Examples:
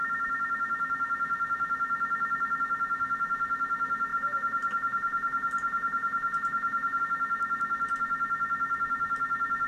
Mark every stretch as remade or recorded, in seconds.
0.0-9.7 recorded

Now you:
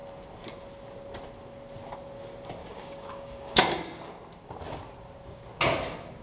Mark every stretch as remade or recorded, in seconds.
0.0-2.6 recorded; 2.6-4.1 remade; 4.1-6.2 recorded

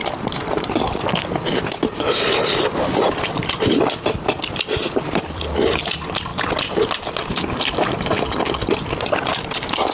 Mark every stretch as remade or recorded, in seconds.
0.0-0.7 remade; 0.7-9.9 recorded

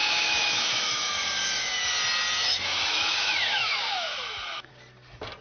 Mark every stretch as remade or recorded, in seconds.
0.0-1.2 remade; 1.2-2.4 recorded; 2.4-4.7 remade; 4.7-5.4 recorded

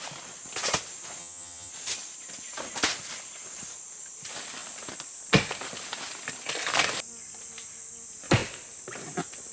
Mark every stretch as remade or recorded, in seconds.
0.0-1.2 recorded; 1.2-1.7 remade; 1.7-9.5 recorded